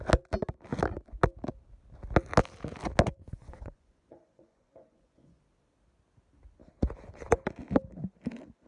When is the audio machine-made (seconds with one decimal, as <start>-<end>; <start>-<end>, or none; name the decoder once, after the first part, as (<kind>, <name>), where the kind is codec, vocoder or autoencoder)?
3.1-5.4 (vocoder, Vocos)